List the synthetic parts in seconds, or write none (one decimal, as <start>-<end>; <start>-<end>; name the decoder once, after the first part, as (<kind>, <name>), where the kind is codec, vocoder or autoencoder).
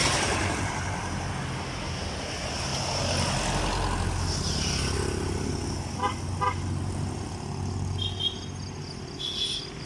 0.0-1.3 (vocoder, BigVGAN v2)